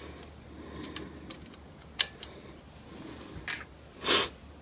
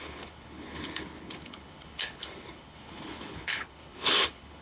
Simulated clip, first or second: second